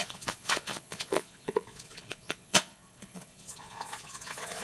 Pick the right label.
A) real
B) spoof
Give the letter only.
B